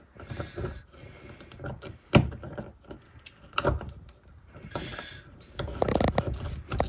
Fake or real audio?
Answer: real